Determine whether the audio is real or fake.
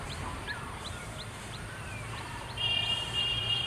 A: fake